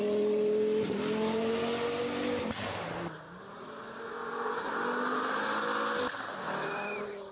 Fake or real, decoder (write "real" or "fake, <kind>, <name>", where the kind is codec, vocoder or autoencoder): real